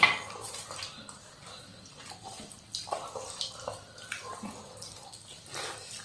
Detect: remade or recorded recorded